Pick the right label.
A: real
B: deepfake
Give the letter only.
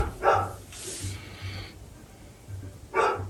A